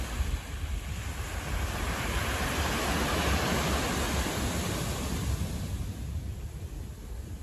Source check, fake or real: real